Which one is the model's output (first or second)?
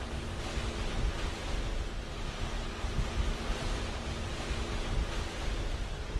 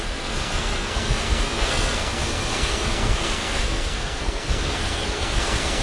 second